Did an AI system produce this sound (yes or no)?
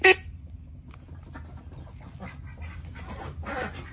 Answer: no